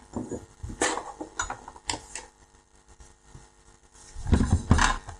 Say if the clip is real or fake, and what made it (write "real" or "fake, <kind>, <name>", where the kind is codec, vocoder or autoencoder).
real